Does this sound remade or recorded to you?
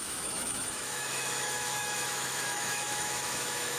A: remade